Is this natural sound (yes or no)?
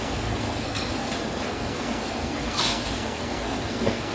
no